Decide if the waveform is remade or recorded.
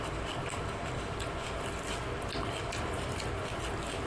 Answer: recorded